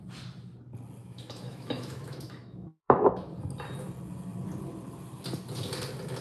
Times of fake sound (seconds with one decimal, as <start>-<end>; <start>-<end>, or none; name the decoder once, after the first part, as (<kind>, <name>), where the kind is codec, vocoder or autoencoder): 1.0-3.3 (autoencoder, DAC-VAE)